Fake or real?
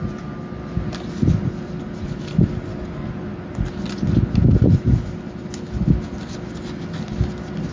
real